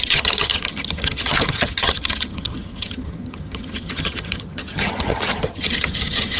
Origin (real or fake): fake